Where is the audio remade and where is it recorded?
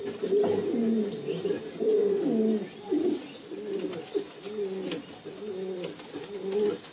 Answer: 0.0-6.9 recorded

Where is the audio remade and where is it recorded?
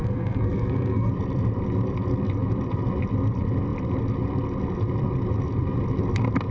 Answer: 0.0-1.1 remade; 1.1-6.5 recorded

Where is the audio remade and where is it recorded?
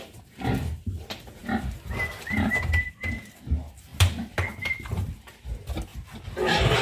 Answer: 0.0-6.8 recorded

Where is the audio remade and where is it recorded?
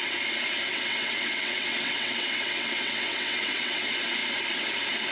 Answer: 0.0-0.7 recorded; 0.7-3.8 remade; 3.8-5.1 recorded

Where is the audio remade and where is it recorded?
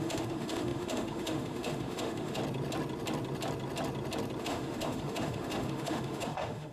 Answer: 0.0-2.4 remade; 2.4-4.4 recorded; 4.4-6.7 remade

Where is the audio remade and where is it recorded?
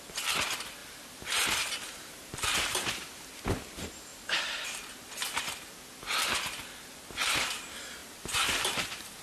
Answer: 0.0-0.8 recorded; 0.8-3.4 remade; 3.4-4.1 recorded; 4.1-4.9 remade; 4.9-8.0 recorded; 8.0-9.2 remade